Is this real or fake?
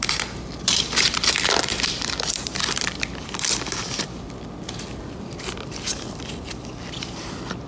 fake